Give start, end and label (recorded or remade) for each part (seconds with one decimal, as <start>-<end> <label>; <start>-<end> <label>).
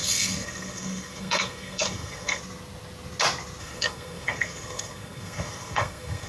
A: 0.0-2.4 remade; 2.4-3.6 recorded; 3.6-6.3 remade